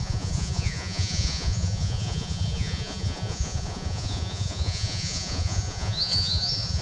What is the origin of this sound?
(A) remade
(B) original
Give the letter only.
A